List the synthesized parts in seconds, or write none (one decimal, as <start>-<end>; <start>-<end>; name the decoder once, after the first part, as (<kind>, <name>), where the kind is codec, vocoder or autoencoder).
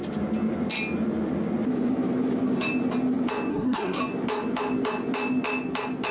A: 3.5-4.0 (codec, SNAC)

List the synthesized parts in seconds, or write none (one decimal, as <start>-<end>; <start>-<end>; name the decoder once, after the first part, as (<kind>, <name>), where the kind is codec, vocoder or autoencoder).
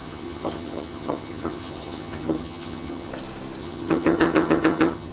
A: 0.0-3.1 (vocoder, HiFi-GAN); 3.6-5.1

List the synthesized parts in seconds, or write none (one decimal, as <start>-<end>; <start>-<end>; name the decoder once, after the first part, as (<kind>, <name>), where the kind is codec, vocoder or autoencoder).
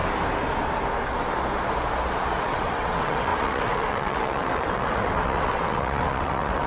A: 2.4-6.7 (vocoder, WaveNeXt)